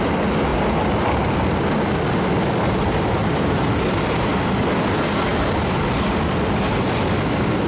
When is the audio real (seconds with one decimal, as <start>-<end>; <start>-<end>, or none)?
0.0-3.2; 4.4-7.7